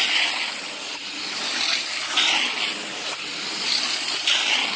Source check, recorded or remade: recorded